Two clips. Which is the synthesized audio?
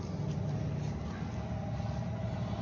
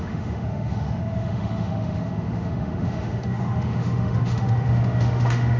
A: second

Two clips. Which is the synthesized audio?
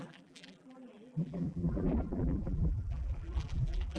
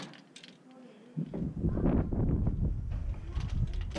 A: first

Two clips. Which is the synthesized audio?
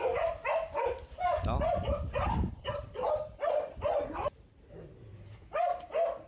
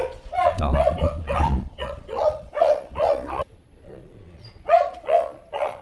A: second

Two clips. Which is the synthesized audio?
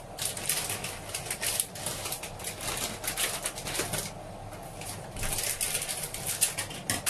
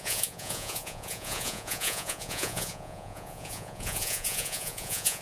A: second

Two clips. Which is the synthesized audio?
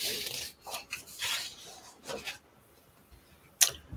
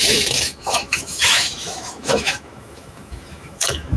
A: second